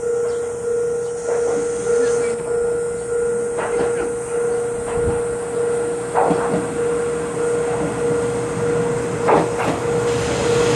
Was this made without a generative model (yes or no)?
yes